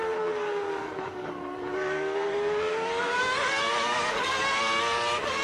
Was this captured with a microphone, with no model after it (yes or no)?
no